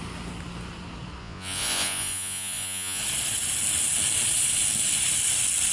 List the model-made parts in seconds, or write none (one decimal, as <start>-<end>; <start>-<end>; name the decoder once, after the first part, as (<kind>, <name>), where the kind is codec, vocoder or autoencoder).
1.2-3.0 (vocoder, Vocos)